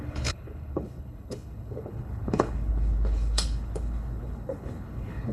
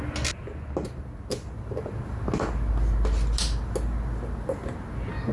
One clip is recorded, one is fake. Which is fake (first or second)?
first